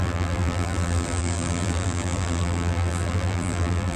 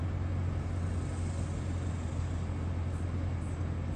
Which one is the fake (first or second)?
first